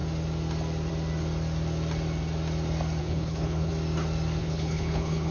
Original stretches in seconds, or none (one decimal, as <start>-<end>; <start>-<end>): 0.0-3.0; 3.7-4.4